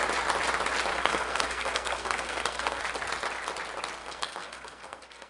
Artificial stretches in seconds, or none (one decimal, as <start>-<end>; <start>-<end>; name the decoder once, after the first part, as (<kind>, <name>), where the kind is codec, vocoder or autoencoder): 0.9-2.8 (codec, SNAC); 4.0-5.3